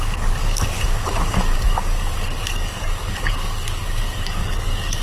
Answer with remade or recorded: remade